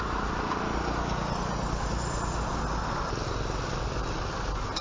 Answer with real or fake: real